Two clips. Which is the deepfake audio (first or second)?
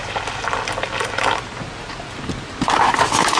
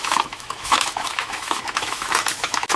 second